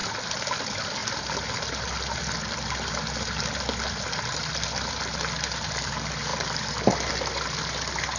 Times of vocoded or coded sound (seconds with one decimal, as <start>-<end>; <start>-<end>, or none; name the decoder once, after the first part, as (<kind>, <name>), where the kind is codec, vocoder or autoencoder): none